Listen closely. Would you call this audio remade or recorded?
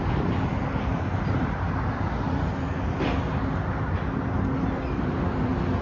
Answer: recorded